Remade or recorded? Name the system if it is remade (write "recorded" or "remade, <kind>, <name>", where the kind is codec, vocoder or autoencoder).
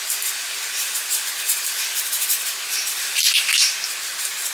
recorded